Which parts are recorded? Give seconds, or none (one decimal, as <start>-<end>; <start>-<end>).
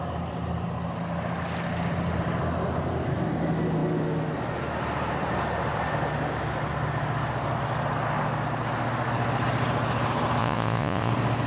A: 0.0-10.4; 11.1-11.5